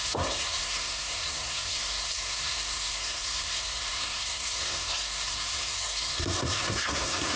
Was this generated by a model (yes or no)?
yes